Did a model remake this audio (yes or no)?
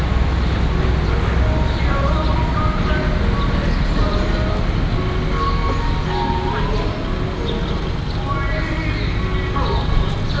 no